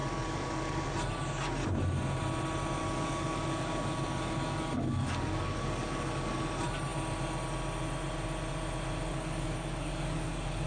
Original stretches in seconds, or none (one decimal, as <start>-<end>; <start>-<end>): 0.9-2.8; 6.4-9.1